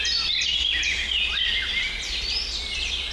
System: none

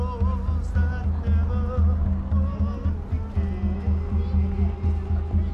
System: none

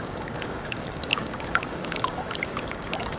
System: codec, DAC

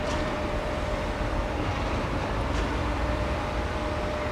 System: vocoder, BigVGAN v2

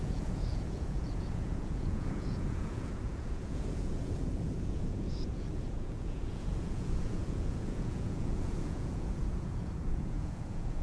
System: vocoder, Vocos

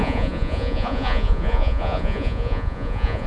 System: vocoder, Vocos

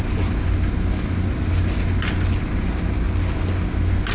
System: none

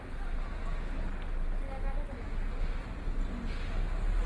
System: none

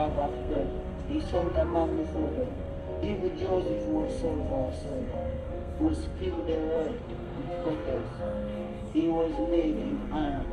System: codec, SNAC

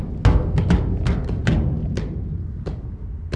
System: none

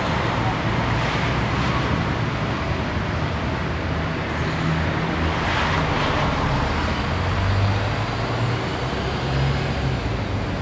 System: none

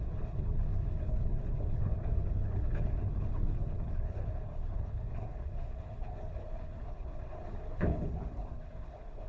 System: codec, HILCodec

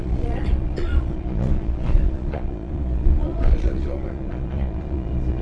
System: vocoder, Vocos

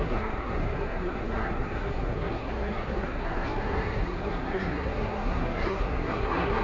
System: codec, SNAC